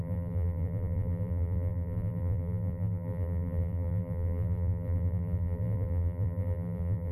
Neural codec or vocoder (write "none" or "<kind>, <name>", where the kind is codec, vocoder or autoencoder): vocoder, BigVGAN v2